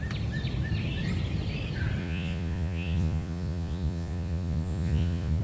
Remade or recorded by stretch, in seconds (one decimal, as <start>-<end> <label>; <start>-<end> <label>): 0.0-2.0 recorded; 2.0-5.4 remade